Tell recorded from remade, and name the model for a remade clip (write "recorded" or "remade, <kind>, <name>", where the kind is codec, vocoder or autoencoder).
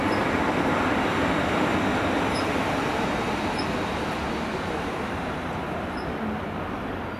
remade, vocoder, BigVGAN v2